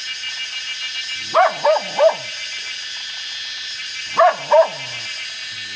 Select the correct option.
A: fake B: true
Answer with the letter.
B